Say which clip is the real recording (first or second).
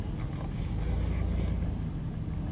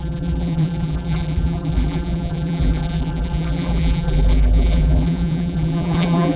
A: first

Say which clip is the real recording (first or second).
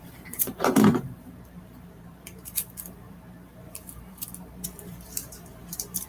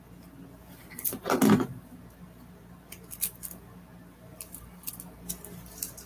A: second